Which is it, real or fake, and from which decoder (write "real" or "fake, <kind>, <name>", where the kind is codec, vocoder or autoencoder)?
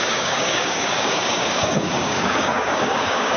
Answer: fake, codec, DAC